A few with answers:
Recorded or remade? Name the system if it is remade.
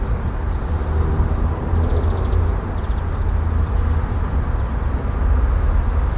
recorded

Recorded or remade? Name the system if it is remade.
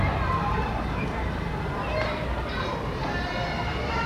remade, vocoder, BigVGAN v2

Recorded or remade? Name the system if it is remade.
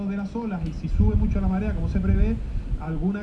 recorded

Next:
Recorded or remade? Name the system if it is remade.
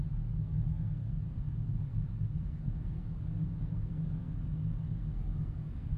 remade, codec, SNAC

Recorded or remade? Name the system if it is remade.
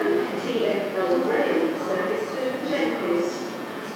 remade, vocoder, Vocos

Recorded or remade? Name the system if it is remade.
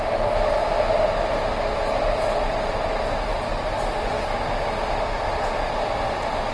recorded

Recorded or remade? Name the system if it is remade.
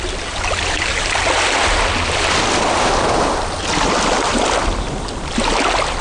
recorded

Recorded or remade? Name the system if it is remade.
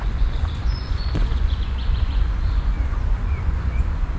remade, vocoder, Vocos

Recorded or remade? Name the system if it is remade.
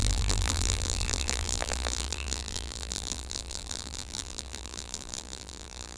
remade, vocoder, BigVGAN v2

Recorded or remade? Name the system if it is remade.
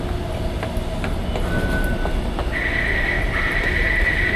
recorded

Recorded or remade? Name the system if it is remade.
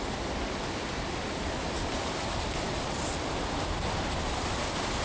recorded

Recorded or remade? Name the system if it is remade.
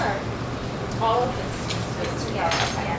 recorded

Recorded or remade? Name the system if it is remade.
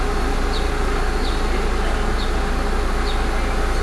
recorded